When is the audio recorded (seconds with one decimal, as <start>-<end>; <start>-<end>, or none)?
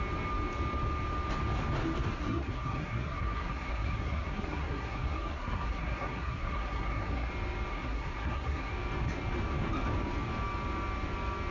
0.0-2.1; 7.3-7.7; 8.7-11.5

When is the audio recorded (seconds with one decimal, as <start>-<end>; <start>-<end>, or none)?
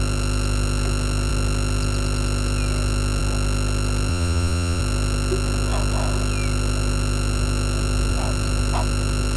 0.0-4.1; 4.8-9.4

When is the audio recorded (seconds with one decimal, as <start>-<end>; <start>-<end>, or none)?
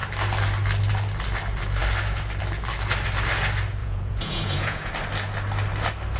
0.0-3.8; 4.9-6.2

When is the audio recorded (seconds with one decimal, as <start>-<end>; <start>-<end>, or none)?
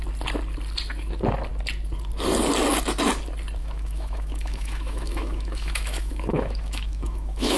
0.0-3.6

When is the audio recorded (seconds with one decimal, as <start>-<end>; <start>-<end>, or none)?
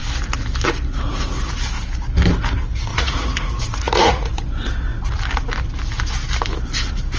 0.0-2.9; 4.3-7.2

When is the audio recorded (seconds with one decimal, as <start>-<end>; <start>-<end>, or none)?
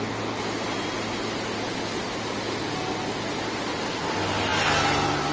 0.0-5.3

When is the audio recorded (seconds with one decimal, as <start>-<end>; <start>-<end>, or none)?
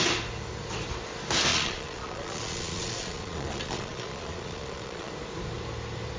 0.0-1.5; 5.1-6.2